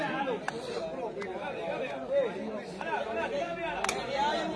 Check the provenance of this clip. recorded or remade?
recorded